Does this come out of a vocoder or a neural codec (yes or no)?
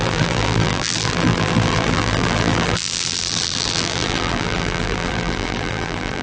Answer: yes